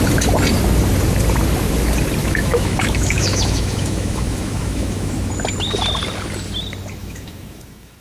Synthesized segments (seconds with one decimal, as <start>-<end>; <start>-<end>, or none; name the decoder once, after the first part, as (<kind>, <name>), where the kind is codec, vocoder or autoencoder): 2.2-5.3 (autoencoder, DAC-VAE); 7.0-8.0